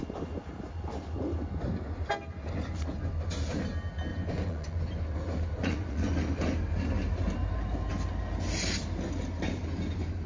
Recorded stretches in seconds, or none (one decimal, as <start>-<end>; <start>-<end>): 0.0-4.1; 4.8-5.6; 6.1-10.3